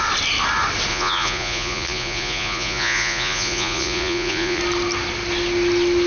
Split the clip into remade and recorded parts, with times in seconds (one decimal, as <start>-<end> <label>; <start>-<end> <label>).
0.0-0.9 recorded; 0.9-4.6 remade; 4.6-6.1 recorded